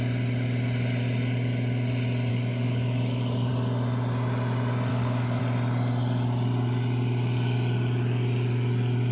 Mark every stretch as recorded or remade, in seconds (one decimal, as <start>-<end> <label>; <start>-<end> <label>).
0.0-2.3 recorded; 2.3-3.5 remade; 3.5-4.9 recorded; 4.9-5.4 remade; 5.4-9.1 recorded